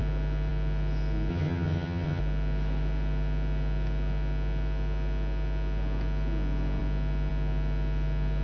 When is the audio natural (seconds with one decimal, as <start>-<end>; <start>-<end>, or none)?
0.0-1.3; 2.2-8.4